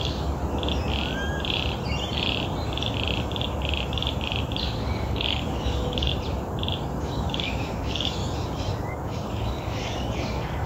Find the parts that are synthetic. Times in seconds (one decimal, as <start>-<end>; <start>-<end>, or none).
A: 0.0-0.4; 4.6-6.1; 7.0-8.2; 8.9-10.7